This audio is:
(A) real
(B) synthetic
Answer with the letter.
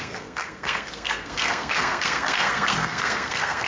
B